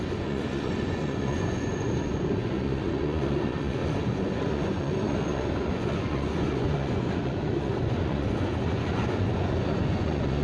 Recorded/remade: remade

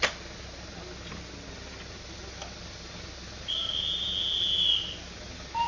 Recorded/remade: recorded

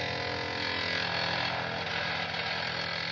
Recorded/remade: recorded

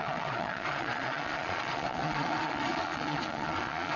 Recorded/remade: remade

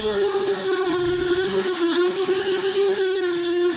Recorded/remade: remade